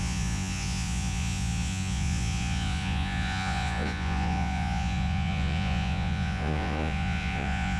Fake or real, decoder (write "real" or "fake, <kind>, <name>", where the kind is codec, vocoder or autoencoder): fake, vocoder, Vocos